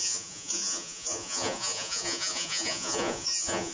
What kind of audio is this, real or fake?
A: fake